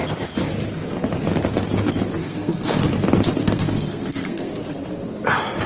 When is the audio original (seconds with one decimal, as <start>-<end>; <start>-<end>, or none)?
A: 0.0-2.2; 2.8-3.4; 4.5-5.7